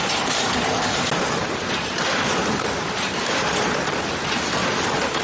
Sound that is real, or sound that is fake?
real